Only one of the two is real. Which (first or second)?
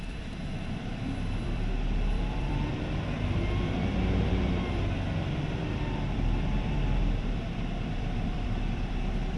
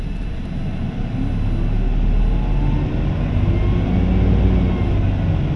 second